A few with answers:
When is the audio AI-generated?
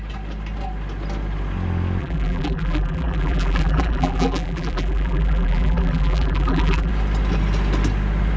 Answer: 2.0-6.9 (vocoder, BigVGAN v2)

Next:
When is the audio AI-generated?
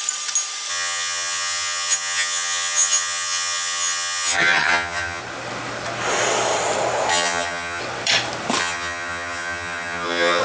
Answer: 0.7-5.2 (vocoder, HiFi-GAN); 7.1-7.8; 8.6-10.4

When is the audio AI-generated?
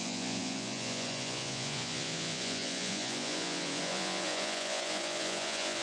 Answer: 0.0-5.8 (vocoder, Vocos)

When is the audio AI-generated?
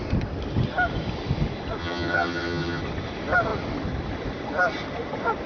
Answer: 1.8-2.8 (vocoder, HiFi-GAN)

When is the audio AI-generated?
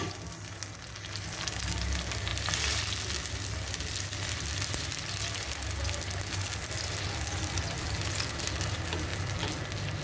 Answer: 9.1-9.6 (vocoder, BigVGAN v2)